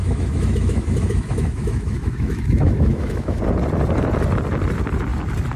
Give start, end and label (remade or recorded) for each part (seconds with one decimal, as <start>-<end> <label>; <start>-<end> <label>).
0.0-3.4 remade; 3.4-5.6 recorded